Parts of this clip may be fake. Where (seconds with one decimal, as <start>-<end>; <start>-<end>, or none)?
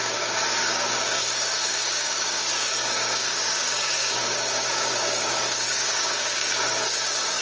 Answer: 0.0-7.4